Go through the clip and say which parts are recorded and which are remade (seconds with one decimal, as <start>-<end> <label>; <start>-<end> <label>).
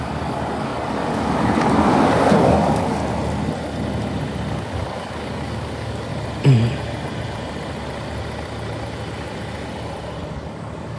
0.0-3.0 remade; 3.0-4.5 recorded; 4.5-6.1 remade; 6.1-10.3 recorded; 10.3-11.0 remade